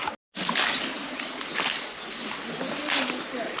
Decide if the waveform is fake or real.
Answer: real